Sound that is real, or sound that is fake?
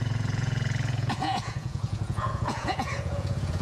fake